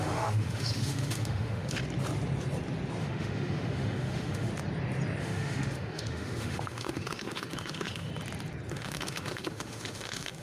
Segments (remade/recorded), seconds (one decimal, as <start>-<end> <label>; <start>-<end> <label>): 0.0-1.8 remade; 1.8-3.0 recorded; 3.0-4.5 remade; 4.5-5.2 recorded; 5.2-8.1 remade; 8.1-8.7 recorded; 8.7-10.4 remade